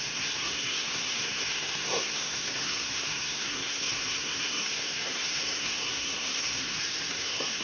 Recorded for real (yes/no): no